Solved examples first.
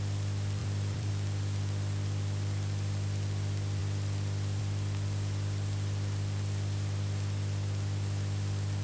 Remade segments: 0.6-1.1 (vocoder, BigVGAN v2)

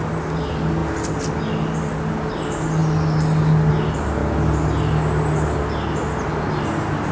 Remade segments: none

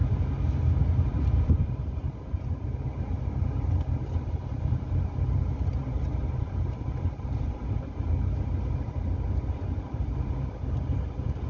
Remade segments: 0.0-11.5 (vocoder, BigVGAN v2)

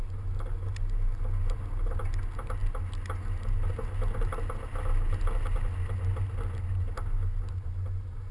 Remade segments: none